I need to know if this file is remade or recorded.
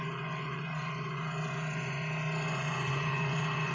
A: remade